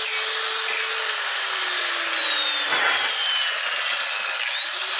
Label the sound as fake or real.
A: real